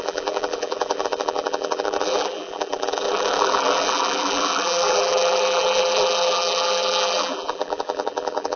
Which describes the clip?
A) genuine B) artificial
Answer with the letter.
B